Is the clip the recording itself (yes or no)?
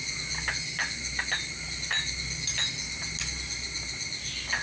yes